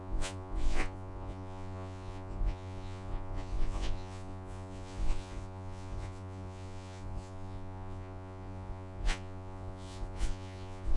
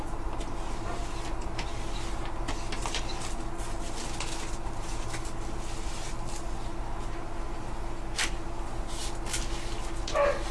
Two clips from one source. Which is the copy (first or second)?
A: first